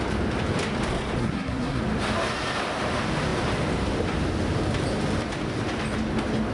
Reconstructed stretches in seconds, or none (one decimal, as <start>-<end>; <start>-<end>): 1.2-1.8